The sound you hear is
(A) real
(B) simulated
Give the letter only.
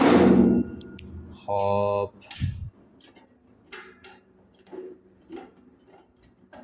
A